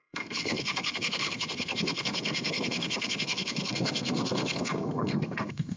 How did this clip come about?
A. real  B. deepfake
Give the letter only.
B